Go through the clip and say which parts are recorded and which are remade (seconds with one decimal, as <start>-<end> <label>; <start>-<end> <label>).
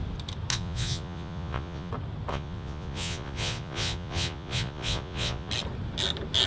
0.0-0.5 recorded; 0.5-1.9 remade; 1.9-2.3 recorded; 2.3-5.5 remade; 5.5-6.5 recorded